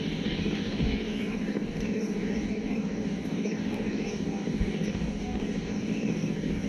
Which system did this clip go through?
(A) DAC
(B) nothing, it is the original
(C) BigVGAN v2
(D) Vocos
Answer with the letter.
A